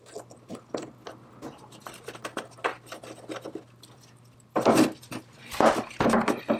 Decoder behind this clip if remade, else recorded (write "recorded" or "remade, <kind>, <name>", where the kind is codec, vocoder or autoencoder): recorded